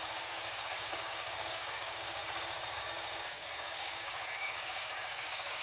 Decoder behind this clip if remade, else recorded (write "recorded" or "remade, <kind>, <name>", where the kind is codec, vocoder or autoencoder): remade, codec, DAC